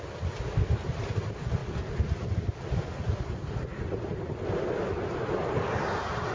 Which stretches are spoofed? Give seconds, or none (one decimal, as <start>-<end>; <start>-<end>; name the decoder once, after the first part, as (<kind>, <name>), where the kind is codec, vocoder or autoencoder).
none